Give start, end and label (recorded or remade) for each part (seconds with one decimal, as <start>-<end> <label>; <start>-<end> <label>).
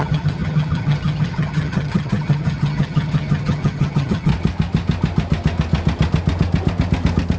0.0-4.3 remade; 4.3-7.4 recorded